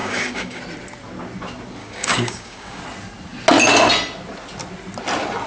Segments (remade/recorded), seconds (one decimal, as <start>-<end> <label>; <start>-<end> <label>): 0.0-0.6 remade; 0.6-1.8 recorded; 1.8-2.8 remade; 2.8-5.5 recorded